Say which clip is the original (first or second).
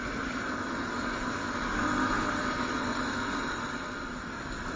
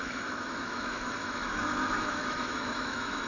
first